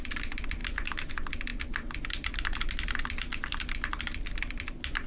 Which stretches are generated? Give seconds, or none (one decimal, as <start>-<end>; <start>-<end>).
none